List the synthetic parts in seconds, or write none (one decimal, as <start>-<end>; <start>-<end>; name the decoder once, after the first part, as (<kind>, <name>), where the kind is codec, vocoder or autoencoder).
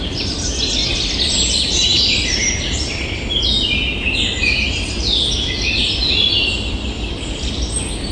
none